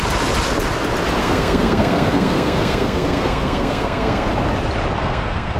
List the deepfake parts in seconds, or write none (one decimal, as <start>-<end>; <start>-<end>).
1.2-4.3; 5.0-5.6